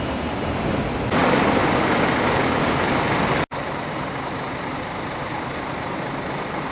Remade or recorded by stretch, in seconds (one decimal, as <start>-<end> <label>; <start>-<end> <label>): 0.0-6.7 recorded